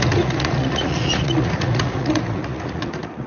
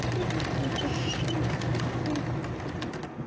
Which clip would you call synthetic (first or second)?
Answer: first